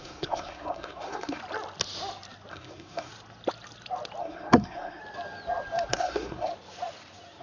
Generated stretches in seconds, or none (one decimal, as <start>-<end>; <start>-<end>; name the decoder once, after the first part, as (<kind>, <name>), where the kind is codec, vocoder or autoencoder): 0.0-1.4 (codec, SNAC); 2.5-3.1; 4.2-5.0; 5.9-6.5